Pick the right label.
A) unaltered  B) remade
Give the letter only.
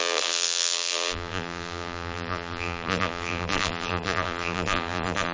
B